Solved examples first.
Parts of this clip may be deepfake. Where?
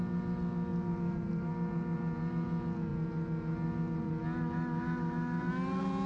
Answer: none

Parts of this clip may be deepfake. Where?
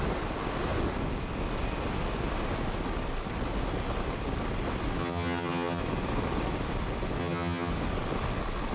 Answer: 5.0-5.8; 7.2-7.7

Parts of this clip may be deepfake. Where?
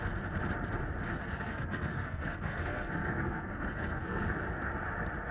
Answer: 1.2-4.4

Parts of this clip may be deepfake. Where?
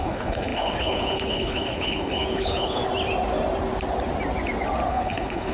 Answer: 0.0-2.8; 4.9-5.5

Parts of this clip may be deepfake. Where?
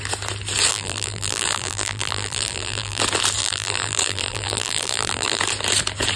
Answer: 0.7-3.0; 3.4-5.4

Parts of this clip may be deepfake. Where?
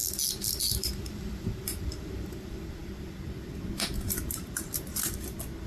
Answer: 0.9-5.7